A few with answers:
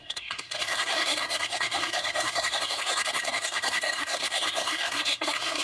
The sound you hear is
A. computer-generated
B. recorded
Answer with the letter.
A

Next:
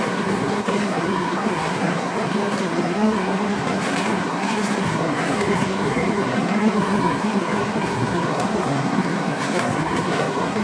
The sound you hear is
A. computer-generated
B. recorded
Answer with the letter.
A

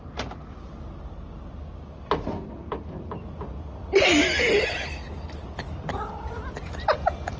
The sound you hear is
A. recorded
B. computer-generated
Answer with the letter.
A